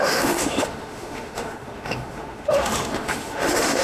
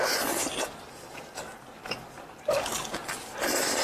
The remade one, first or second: first